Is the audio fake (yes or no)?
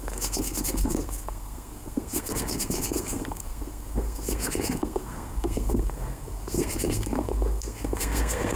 yes